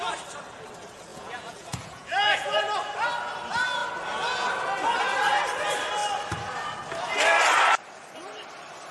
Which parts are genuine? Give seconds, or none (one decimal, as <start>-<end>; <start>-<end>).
0.0-1.1; 2.7-8.9